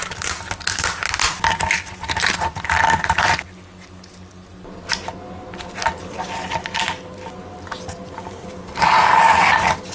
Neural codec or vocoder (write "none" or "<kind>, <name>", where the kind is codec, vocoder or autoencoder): none